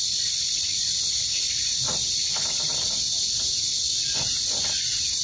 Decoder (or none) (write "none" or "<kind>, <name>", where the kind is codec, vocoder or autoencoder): none